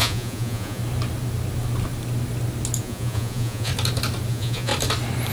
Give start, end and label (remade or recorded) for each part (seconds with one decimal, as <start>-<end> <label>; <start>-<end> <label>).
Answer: 0.0-0.8 remade; 0.8-2.8 recorded; 2.8-3.7 remade; 3.7-4.3 recorded; 4.3-4.7 remade; 4.7-5.3 recorded